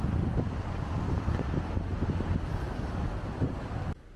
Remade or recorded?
recorded